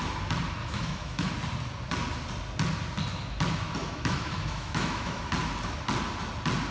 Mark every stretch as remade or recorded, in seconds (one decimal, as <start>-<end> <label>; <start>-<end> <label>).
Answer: 0.0-0.6 recorded; 0.6-1.3 remade; 1.3-3.8 recorded; 3.8-5.3 remade; 5.3-6.7 recorded